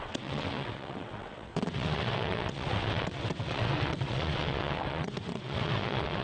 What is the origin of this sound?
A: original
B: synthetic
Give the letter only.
B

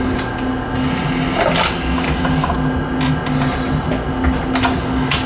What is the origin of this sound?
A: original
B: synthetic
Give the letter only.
A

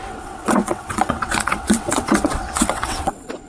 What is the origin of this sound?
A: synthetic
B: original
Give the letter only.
A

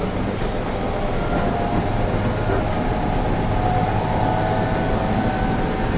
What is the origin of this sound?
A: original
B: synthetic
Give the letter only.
A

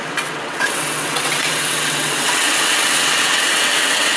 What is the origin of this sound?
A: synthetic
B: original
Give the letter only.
A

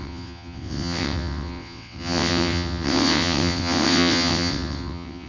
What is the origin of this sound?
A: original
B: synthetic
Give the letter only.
B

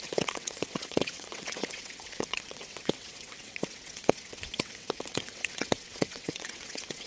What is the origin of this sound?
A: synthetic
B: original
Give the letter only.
A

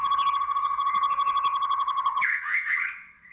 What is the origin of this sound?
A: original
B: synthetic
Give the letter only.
B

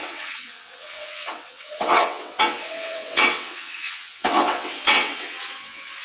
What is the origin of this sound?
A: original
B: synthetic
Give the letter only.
B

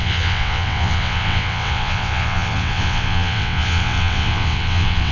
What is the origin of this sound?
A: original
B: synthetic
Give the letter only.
B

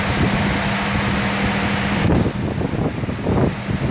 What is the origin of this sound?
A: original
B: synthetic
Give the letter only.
A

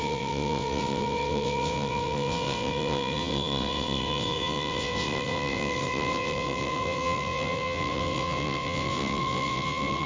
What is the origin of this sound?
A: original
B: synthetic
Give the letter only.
B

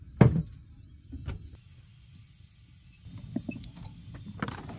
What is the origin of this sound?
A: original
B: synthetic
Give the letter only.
A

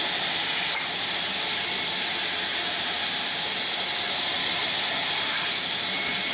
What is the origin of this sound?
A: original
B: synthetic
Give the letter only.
A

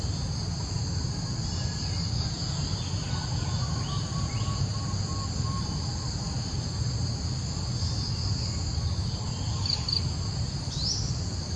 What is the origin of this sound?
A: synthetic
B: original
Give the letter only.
B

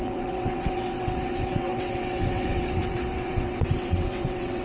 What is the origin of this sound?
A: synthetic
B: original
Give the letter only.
A